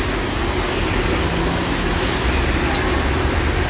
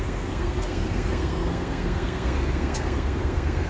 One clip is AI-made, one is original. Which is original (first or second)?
first